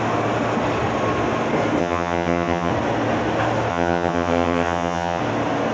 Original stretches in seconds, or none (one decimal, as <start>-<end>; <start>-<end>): 0.0-1.8; 2.7-3.7; 5.2-5.7